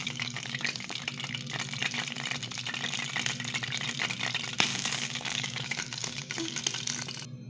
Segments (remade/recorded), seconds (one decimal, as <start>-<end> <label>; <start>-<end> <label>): 0.0-1.0 remade; 1.0-4.7 recorded; 4.7-6.6 remade; 6.6-7.5 recorded